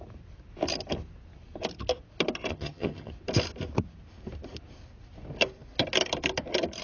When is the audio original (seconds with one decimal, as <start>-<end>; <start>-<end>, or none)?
0.0-2.5; 3.1-6.8